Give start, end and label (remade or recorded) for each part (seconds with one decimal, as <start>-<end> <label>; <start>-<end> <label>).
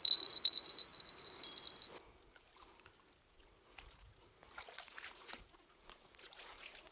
0.0-0.9 remade; 0.9-3.3 recorded; 3.3-6.9 remade